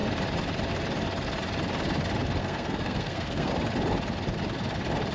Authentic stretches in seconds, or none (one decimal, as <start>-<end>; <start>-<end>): 0.0-2.4; 3.5-5.1